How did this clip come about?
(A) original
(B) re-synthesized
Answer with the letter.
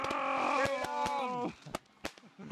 A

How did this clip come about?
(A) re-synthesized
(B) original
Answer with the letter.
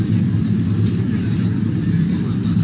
A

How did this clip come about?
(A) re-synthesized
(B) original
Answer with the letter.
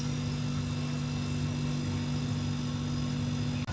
B